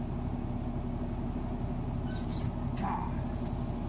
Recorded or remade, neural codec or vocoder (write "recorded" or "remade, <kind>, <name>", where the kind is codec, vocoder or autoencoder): recorded